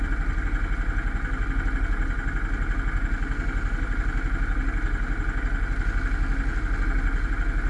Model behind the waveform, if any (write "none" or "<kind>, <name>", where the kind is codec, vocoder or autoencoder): none